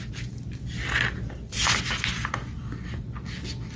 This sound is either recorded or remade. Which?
recorded